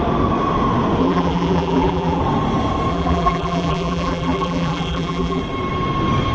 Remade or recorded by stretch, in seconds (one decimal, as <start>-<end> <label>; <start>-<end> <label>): 0.0-1.0 recorded; 1.0-2.2 remade; 2.2-2.9 recorded; 2.9-5.4 remade; 5.4-6.3 recorded